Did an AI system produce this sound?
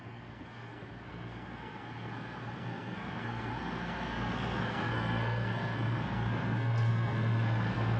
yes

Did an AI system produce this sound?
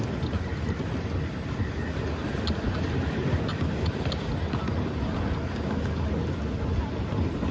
no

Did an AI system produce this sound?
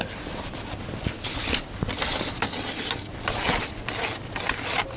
no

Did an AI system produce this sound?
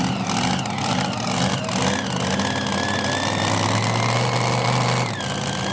no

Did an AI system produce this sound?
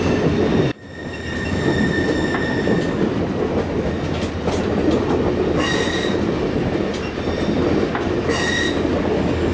no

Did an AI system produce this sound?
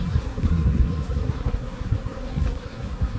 yes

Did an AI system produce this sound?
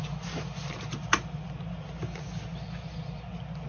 no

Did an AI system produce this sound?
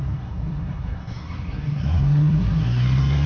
yes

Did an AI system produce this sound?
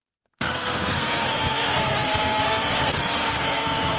yes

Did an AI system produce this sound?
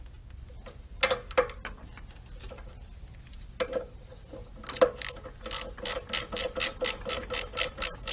no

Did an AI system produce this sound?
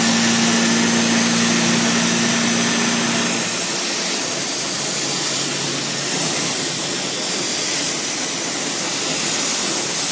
no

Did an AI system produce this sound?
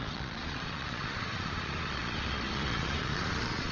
yes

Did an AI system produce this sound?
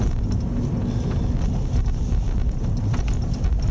no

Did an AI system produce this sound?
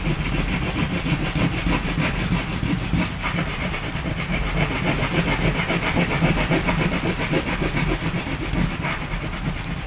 yes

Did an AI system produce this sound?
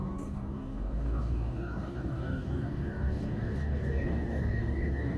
yes